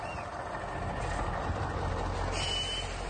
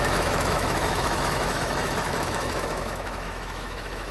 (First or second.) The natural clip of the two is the first